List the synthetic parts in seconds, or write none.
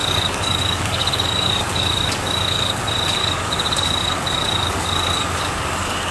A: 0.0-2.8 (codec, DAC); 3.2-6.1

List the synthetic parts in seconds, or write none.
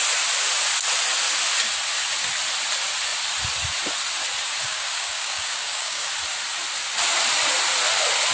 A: 4.6-6.1 (codec, DAC)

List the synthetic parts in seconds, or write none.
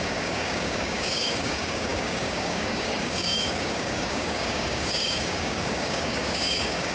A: 0.0-6.9 (codec, DAC)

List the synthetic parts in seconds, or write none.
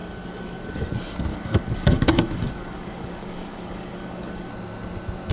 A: 0.0-0.9 (codec, DAC); 1.3-4.5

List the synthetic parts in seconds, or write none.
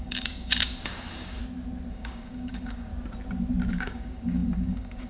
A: 0.0-1.4 (codec, DAC); 1.9-2.9; 3.7-5.1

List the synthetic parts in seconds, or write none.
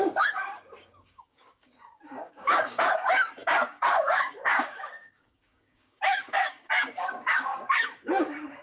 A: 0.0-8.6 (codec, DAC)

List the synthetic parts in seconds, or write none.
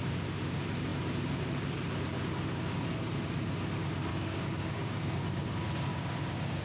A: 4.1-5.5 (codec, DAC); 5.9-6.6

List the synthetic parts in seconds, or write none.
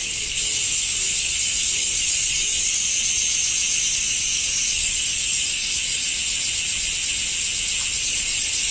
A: 0.0-2.9 (codec, DAC); 3.8-6.0; 8.0-8.7